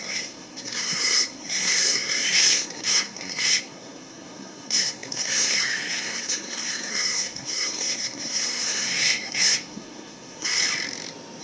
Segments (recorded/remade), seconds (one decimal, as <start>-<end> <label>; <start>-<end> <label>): 0.0-10.6 remade; 10.6-11.4 recorded